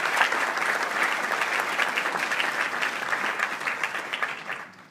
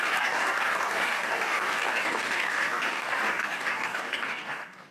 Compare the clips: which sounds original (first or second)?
first